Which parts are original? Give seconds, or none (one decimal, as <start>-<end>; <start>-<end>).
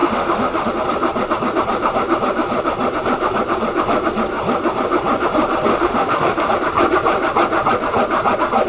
0.7-5.7; 6.5-8.7